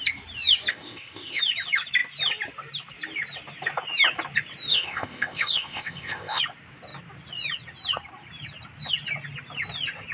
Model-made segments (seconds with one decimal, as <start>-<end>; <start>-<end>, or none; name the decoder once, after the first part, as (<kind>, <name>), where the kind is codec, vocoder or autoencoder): 0.7-1.4 (codec, ZipCodec); 4.7-6.4